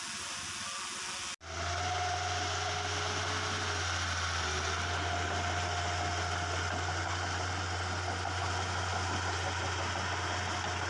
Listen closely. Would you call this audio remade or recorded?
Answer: recorded